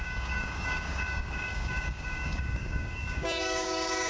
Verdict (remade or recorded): remade